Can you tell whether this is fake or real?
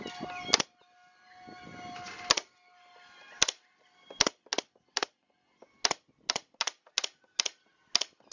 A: real